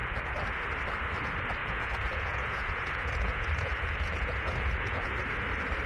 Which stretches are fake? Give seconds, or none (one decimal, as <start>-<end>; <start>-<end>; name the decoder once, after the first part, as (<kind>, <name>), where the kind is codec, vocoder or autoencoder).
1.6-5.1 (vocoder, Vocos)